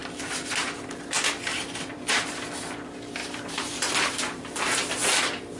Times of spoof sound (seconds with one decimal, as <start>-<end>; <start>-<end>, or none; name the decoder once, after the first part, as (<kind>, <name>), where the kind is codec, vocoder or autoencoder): 0.0-1.0 (vocoder, BigVGAN v2); 1.5-2.3; 3.2-4.9